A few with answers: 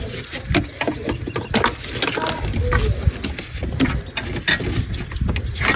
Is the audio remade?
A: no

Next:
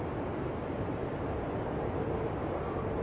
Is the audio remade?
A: no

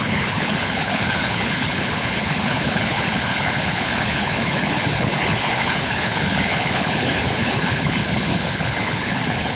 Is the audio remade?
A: yes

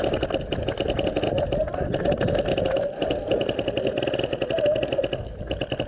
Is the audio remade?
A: no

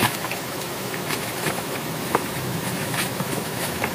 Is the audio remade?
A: yes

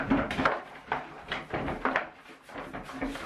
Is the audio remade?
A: yes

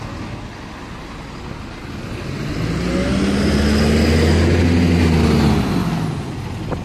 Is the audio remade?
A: no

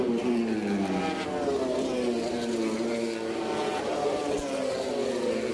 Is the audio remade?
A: no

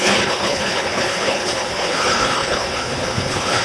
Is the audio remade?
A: yes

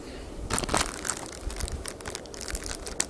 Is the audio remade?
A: no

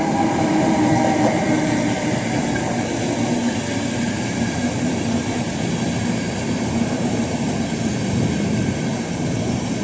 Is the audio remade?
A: yes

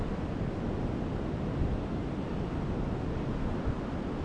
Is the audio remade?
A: no